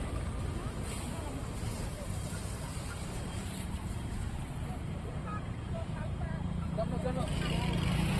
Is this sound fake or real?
fake